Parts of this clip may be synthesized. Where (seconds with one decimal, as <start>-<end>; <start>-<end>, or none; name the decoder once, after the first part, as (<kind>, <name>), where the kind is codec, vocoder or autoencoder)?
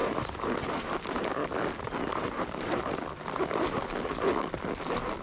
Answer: 0.0-1.5 (vocoder, BigVGAN v2); 2.1-2.8